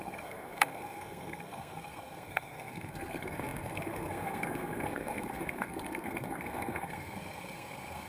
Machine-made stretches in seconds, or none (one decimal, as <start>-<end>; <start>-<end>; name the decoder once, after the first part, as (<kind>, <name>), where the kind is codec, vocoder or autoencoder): 0.0-8.1 (codec, SNAC)